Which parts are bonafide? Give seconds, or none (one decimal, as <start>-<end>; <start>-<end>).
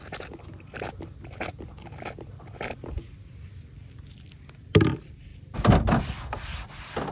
0.0-7.1